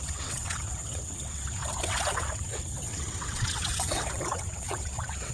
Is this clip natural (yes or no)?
no